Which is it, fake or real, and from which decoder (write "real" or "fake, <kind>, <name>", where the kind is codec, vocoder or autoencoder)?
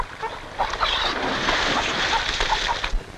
real